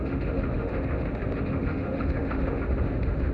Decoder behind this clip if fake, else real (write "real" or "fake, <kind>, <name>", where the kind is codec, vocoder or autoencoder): fake, autoencoder, DAC-VAE